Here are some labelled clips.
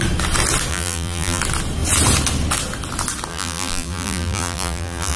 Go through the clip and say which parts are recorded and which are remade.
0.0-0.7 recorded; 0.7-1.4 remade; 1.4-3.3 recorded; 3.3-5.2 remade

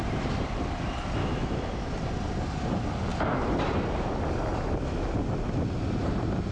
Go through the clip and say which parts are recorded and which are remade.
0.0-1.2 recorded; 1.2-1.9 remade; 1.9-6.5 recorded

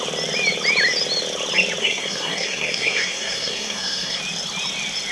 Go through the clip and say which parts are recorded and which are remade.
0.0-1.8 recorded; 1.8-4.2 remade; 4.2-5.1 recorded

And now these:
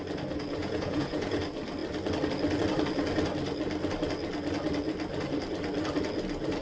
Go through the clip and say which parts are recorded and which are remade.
0.0-0.6 recorded; 0.6-1.4 remade; 1.4-6.6 recorded

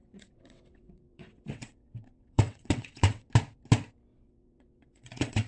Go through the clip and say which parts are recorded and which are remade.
0.0-3.3 remade; 3.3-4.1 recorded; 4.1-5.5 remade

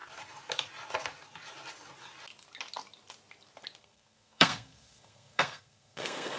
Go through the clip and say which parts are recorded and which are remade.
0.0-3.8 recorded; 3.8-6.4 remade